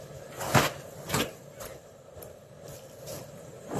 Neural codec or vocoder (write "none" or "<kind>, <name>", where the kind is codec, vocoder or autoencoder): none